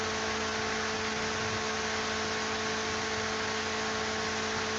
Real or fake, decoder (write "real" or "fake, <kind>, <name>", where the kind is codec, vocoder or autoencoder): real